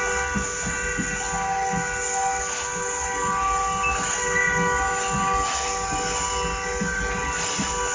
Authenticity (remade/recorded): recorded